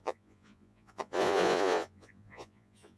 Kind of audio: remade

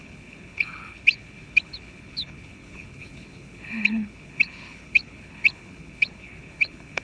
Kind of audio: remade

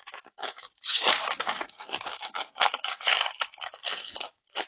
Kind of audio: remade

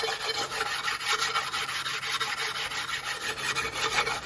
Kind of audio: recorded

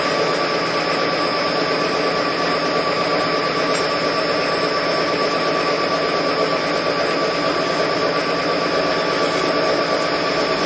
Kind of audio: recorded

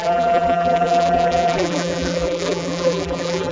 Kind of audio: remade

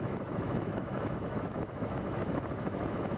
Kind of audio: remade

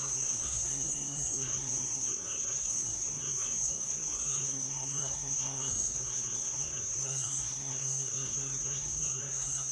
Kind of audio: remade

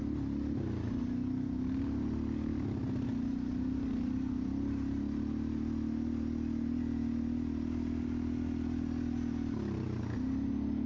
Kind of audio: recorded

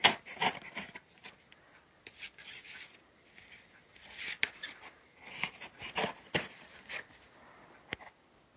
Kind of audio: recorded